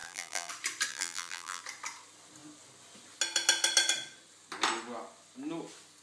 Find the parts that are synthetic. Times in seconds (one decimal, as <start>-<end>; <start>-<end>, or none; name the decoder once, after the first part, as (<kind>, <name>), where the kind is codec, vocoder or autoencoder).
0.0-0.5 (vocoder, BigVGAN v2); 0.9-1.6